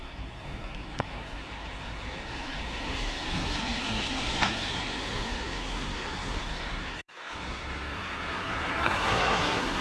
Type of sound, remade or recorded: remade